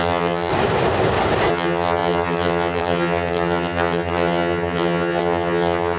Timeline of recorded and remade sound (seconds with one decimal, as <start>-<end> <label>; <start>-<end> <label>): 0.0-0.5 remade; 0.5-1.5 recorded; 1.5-6.0 remade

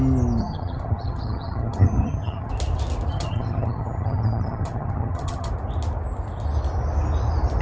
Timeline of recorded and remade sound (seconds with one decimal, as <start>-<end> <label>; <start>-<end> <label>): 0.0-0.4 recorded; 0.4-2.5 remade; 2.5-3.1 recorded; 3.1-5.5 remade; 5.5-7.6 recorded